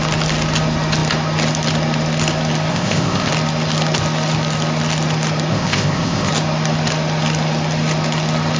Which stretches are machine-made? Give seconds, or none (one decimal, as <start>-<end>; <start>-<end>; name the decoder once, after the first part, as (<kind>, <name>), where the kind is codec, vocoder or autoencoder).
2.7-3.3 (codec, ZipCodec); 5.5-6.3